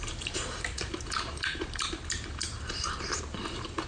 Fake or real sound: fake